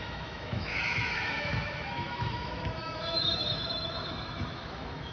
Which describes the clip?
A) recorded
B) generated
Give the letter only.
B